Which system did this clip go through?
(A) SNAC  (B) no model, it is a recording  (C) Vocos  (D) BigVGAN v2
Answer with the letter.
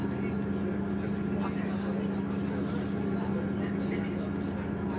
B